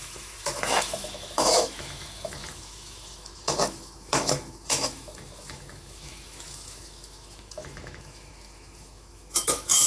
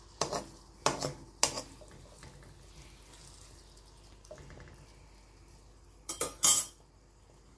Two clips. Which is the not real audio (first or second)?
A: first